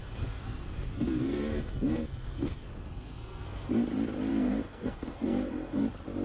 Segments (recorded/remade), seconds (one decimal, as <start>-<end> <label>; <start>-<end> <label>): 0.0-3.7 remade; 3.7-4.3 recorded; 4.3-5.8 remade; 5.8-6.2 recorded